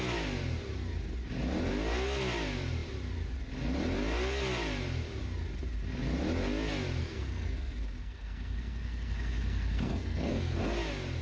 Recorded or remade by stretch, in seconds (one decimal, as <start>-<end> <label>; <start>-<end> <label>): 0.0-7.0 recorded; 7.0-10.6 remade; 10.6-11.2 recorded